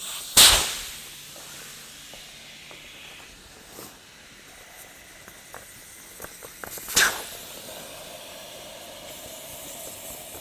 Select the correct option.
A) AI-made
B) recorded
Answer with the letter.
B